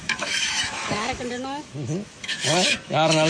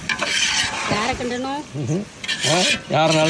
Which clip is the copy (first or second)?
first